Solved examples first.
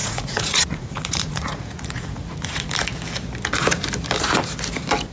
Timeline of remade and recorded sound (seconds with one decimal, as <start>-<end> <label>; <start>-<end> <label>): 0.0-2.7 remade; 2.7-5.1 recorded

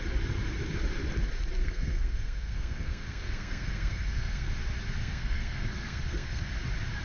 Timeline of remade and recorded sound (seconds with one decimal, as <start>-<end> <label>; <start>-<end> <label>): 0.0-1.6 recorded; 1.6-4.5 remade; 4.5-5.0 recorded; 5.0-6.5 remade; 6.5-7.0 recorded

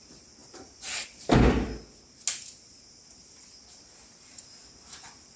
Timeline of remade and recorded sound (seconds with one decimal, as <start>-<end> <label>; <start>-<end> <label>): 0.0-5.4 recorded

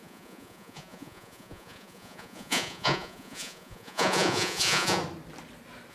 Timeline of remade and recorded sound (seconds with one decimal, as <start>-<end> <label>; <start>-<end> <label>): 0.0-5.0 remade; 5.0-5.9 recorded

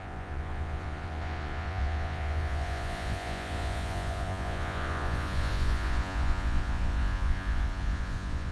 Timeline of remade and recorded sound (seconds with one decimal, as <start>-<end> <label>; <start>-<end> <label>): 0.0-8.5 remade

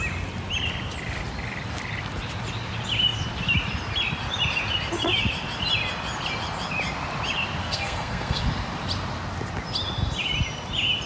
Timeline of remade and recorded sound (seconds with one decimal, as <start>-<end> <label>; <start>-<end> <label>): 0.0-7.6 recorded; 7.6-8.4 remade; 8.4-11.1 recorded